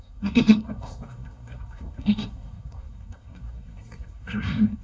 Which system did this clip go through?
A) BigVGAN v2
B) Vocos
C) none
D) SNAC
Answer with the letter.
D